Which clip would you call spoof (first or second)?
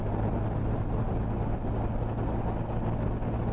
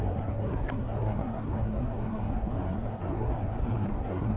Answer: second